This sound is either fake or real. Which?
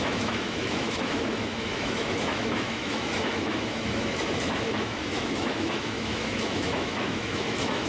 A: fake